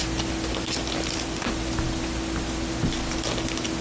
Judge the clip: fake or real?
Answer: real